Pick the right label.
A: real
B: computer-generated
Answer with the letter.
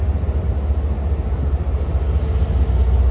A